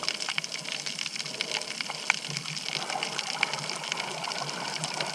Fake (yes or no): no